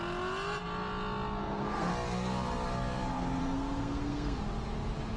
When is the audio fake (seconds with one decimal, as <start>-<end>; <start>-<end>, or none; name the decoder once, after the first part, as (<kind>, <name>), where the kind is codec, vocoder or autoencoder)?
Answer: 1.4-1.9 (codec, SNAC); 3.4-4.4